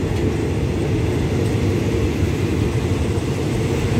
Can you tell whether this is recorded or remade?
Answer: recorded